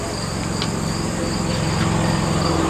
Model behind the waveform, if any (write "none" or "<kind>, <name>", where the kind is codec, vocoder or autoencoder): none